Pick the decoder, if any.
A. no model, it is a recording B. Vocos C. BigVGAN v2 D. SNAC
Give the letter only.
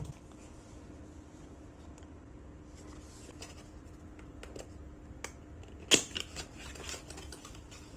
A